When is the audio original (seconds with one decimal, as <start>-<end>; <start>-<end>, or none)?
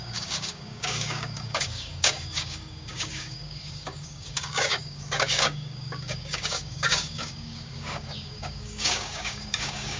none